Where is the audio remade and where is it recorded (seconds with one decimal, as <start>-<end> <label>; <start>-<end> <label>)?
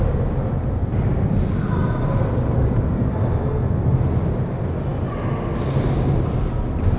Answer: 0.0-7.0 recorded